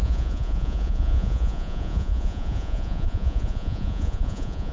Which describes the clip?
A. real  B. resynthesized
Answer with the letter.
B